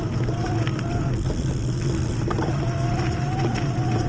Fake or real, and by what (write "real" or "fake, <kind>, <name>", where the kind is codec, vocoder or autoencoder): real